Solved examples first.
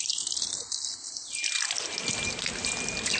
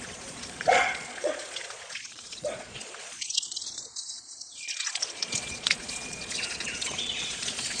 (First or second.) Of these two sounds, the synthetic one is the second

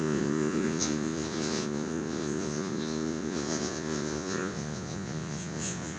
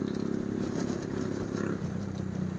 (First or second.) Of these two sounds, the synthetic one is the first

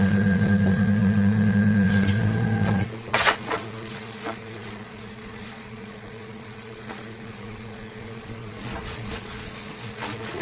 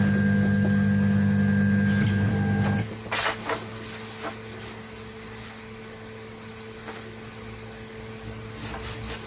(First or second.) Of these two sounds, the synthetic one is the first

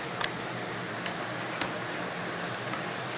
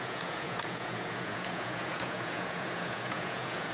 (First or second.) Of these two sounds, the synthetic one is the second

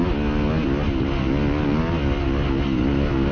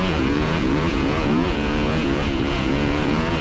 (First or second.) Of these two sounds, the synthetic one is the second